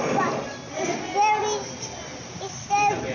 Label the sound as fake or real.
real